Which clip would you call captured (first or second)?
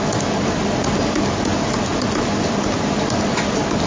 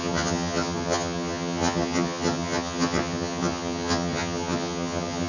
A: first